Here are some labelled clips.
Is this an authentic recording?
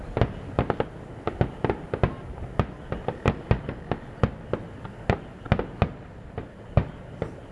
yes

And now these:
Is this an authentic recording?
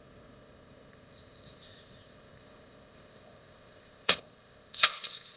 no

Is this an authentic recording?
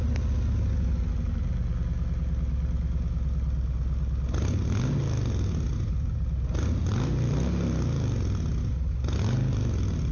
yes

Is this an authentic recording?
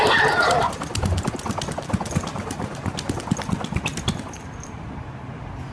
yes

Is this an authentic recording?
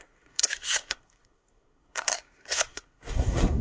no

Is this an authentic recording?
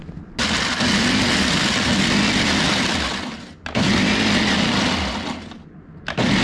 yes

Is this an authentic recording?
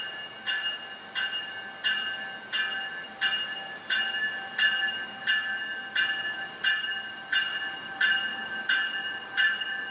yes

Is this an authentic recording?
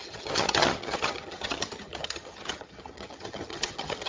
no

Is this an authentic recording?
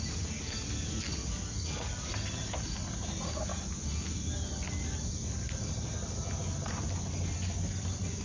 yes